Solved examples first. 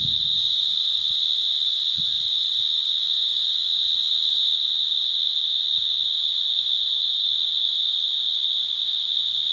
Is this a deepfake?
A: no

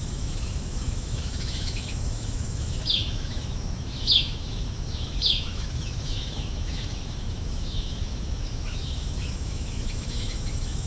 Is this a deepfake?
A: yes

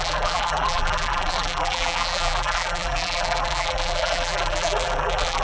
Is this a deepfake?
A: yes